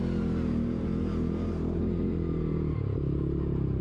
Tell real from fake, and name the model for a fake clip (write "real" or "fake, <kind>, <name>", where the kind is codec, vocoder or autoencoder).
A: fake, vocoder, BigVGAN v2